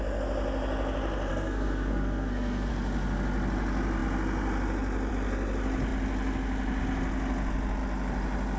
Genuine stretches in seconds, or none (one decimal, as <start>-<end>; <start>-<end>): 0.0-1.3; 2.7-8.6